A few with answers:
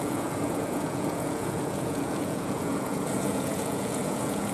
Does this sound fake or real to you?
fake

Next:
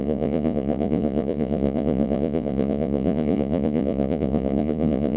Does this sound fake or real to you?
fake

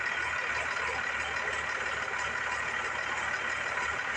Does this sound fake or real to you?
real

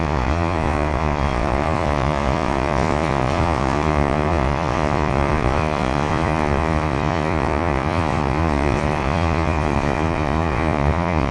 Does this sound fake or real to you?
fake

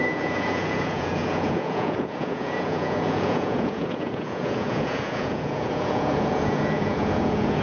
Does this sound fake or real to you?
fake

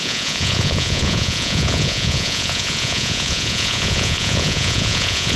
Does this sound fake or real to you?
fake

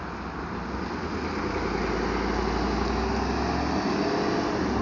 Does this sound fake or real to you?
real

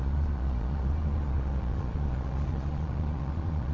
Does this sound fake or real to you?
fake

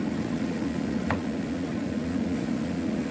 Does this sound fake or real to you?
fake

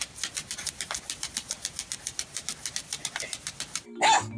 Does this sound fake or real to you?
real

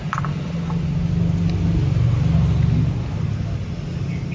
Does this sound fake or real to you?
real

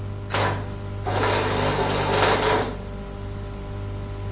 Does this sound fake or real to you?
real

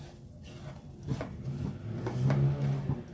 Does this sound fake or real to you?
real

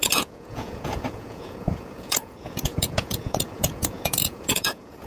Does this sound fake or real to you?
fake